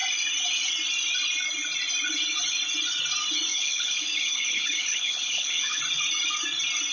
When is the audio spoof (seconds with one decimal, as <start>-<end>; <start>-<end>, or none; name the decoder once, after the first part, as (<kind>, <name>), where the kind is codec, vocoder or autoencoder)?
3.5-5.8 (codec, HILCodec)